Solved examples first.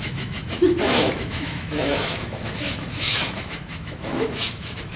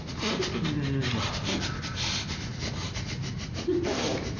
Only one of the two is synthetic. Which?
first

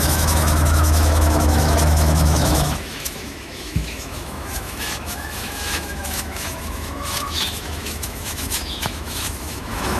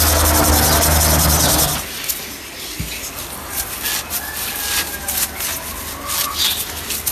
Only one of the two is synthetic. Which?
first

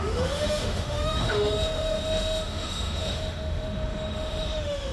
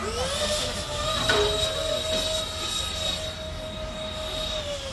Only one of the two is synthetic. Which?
first